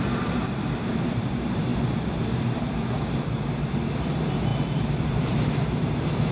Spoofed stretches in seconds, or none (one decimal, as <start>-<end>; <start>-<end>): 0.0-4.5; 5.1-6.3